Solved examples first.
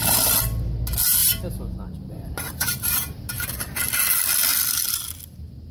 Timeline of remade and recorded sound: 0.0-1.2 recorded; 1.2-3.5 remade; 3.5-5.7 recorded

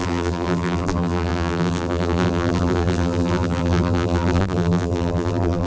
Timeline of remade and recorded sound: 0.0-5.7 remade